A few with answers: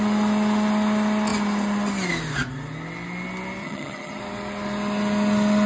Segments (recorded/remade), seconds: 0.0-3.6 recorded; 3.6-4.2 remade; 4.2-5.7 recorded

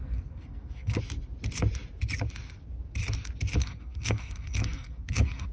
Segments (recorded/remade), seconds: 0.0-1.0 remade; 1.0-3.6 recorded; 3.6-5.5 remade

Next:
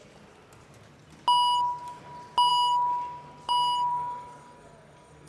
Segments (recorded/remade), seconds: 0.0-3.9 recorded; 3.9-5.3 remade